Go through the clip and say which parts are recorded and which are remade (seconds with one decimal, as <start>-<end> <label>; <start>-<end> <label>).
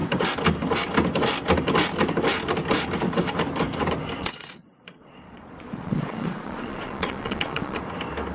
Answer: 0.0-4.2 recorded; 4.2-7.8 remade; 7.8-8.3 recorded